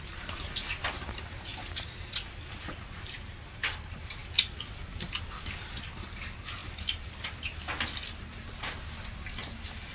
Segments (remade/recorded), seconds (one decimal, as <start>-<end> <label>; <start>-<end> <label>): 0.0-9.9 recorded